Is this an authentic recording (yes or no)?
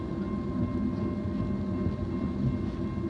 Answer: yes